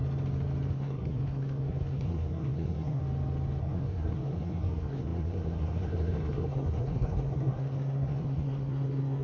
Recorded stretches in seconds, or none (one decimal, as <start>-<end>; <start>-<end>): 0.0-0.7; 3.0-3.6